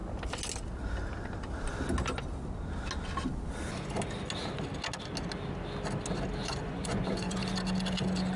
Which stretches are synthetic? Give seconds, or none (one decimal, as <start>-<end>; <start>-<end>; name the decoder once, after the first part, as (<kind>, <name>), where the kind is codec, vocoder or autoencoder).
6.4-7.4 (vocoder, Vocos)